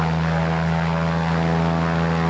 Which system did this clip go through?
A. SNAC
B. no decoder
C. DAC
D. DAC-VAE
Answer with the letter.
B